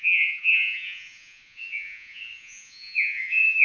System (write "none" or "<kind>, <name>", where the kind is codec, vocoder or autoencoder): vocoder, Vocos